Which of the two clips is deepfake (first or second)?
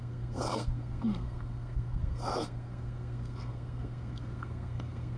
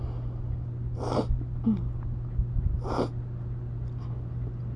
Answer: first